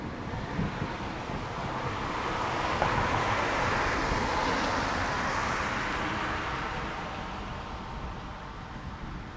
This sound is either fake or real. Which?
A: real